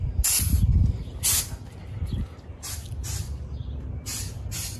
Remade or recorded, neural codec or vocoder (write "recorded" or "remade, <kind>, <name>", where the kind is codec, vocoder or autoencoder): recorded